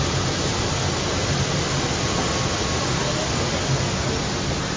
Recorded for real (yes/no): yes